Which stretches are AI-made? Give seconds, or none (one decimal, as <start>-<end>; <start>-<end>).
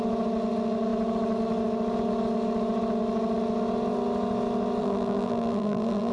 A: 4.8-6.1